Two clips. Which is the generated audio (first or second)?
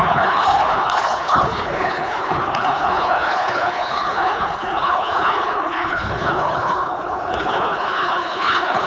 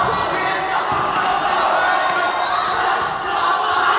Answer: first